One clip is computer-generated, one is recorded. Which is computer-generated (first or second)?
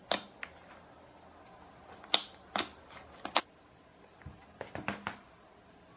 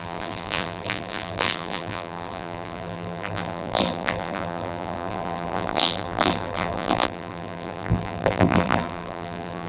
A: second